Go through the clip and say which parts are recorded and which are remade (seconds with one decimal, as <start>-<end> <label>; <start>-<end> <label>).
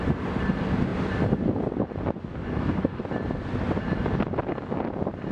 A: 0.0-2.5 recorded; 2.5-3.0 remade; 3.0-5.3 recorded